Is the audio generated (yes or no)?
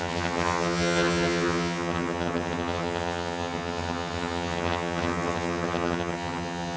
yes